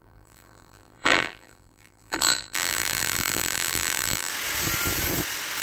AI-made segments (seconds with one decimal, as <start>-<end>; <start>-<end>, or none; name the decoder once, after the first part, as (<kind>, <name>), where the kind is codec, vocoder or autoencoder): 0.0-4.3 (vocoder, BigVGAN v2)